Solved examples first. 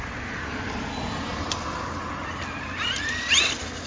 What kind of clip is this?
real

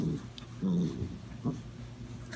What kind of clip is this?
real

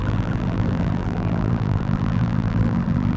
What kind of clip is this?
fake